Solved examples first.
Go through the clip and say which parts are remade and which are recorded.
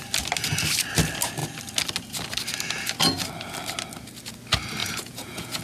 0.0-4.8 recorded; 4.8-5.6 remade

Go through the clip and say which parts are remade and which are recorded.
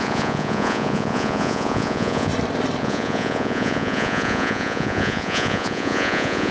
0.0-2.3 remade; 2.3-2.8 recorded; 2.8-6.5 remade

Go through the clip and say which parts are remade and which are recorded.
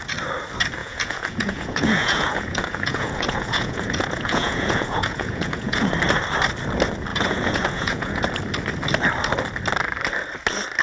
0.0-0.8 recorded; 0.8-5.9 remade; 5.9-7.1 recorded; 7.1-8.2 remade; 8.2-10.8 recorded